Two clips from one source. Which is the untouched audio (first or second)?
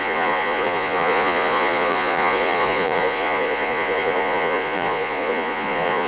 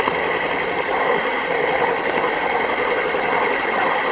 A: second